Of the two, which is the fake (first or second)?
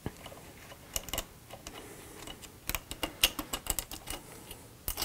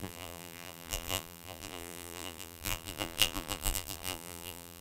second